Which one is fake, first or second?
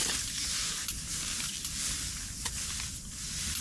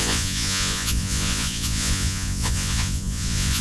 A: second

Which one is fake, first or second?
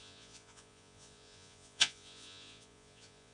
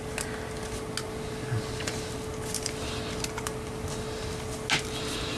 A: first